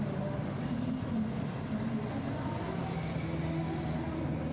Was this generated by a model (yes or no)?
no